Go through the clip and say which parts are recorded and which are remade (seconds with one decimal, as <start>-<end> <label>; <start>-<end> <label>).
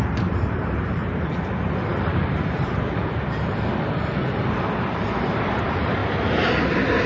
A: 0.0-6.0 remade; 6.0-7.1 recorded